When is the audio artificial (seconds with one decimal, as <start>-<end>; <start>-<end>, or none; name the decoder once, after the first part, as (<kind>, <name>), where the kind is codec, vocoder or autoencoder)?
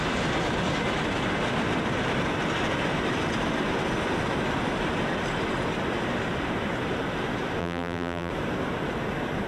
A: 7.6-8.3 (vocoder, BigVGAN v2)